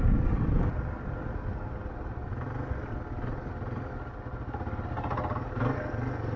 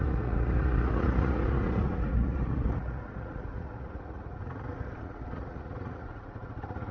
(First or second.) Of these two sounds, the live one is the first